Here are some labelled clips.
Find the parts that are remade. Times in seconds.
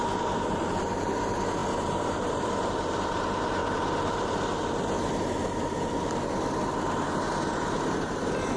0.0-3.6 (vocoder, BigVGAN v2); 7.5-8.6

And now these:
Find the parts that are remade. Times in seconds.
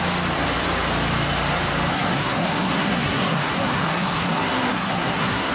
1.9-5.5 (codec, SNAC)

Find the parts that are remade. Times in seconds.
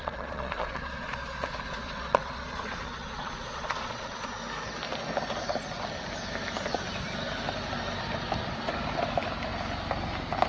0.0-4.3 (vocoder, Vocos)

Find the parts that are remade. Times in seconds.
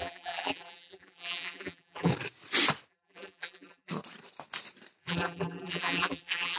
0.0-2.1 (vocoder, BigVGAN v2); 2.9-3.9; 5.0-6.6